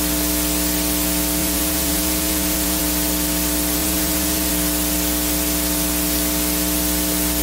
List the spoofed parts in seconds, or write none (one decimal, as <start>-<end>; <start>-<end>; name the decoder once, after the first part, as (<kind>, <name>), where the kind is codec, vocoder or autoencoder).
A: 1.4-2.8 (vocoder, Vocos); 3.8-4.5